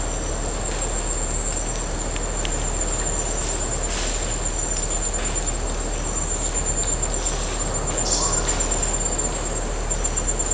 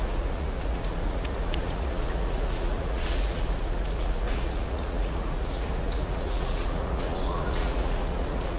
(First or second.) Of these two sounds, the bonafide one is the first